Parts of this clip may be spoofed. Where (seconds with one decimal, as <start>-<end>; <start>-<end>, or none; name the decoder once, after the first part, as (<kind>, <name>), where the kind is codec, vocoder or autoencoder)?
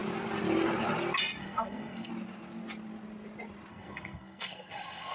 1.4-2.1 (codec, SNAC); 3.7-5.1